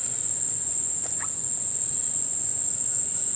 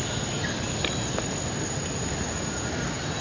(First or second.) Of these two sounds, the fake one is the first